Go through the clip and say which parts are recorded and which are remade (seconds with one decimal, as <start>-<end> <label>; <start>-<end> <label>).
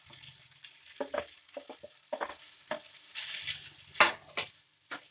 0.0-5.1 recorded